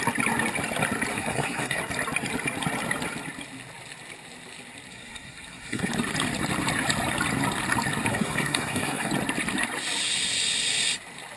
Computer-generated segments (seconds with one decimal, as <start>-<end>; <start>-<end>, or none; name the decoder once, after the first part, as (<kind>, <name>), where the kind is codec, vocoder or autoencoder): 1.1-1.8 (codec, SNAC); 4.9-5.9; 8.1-9.1